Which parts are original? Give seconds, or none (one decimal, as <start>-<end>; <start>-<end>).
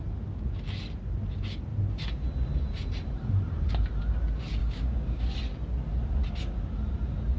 0.0-4.6; 5.2-7.4